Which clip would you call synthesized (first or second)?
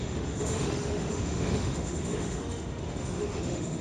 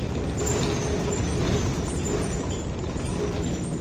first